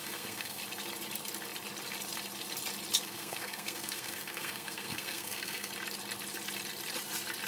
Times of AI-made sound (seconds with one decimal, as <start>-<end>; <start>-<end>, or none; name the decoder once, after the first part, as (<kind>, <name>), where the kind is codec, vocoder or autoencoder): 0.0-0.6 (codec, SNAC); 3.0-5.7